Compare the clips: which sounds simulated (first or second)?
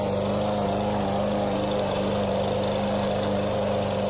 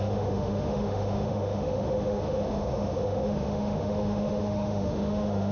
second